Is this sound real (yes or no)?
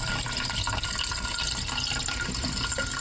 yes